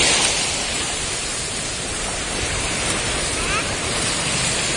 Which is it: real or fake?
real